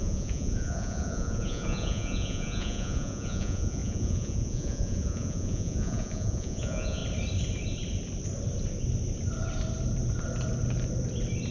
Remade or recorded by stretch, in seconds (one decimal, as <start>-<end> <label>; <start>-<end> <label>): 0.0-7.0 remade; 7.0-11.5 recorded